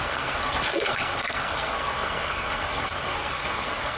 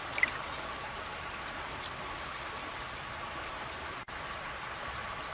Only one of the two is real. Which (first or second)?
second